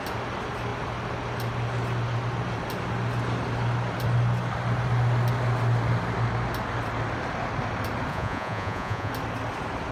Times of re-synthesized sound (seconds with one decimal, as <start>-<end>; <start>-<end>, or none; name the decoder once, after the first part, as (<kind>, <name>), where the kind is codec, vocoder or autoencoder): 8.1-9.1 (vocoder, Vocos)